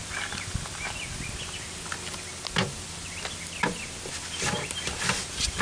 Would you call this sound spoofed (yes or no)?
no